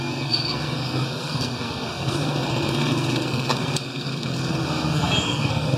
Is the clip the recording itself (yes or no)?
no